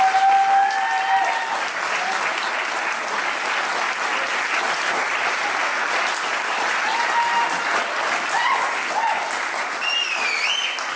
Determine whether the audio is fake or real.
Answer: real